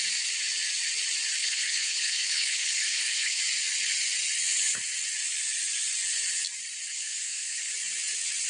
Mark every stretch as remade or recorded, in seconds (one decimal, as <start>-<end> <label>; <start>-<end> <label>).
0.0-1.4 recorded; 1.4-3.4 remade; 3.4-6.9 recorded; 6.9-7.7 remade; 7.7-8.5 recorded